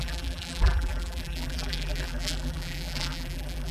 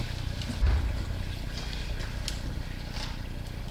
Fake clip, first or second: first